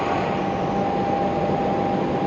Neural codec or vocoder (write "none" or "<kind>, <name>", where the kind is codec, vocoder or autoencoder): none